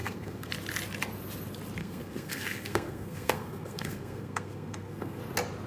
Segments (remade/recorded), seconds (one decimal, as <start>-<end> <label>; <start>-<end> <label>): 0.0-0.5 remade; 0.5-1.8 recorded; 1.8-5.2 remade; 5.2-5.7 recorded